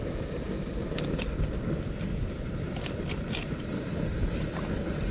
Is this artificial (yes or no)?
no